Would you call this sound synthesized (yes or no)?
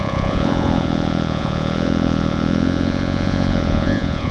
yes